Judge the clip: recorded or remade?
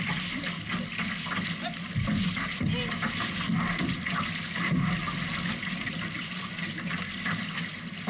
recorded